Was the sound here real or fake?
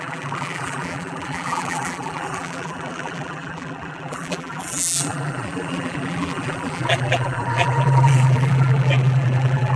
fake